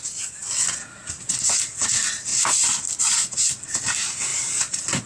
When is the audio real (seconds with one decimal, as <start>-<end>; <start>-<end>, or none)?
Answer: 0.0-4.3